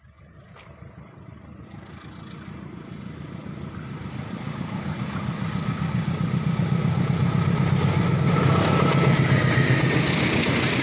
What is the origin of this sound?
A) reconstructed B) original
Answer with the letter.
B